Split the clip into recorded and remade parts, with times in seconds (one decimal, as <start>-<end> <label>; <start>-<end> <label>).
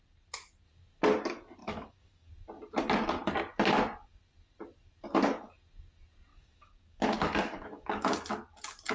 0.0-1.6 recorded; 1.6-2.3 remade; 2.3-6.3 recorded; 6.3-8.2 remade; 8.2-8.9 recorded